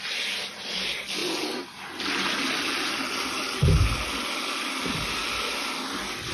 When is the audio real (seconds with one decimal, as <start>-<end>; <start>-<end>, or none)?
0.0-6.3